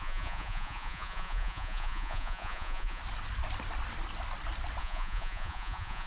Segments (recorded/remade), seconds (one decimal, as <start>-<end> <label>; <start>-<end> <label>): 0.0-3.0 remade; 3.0-4.8 recorded; 4.8-6.1 remade